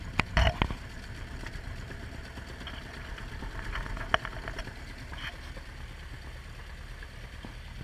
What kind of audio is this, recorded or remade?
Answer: recorded